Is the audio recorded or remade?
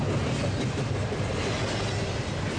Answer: recorded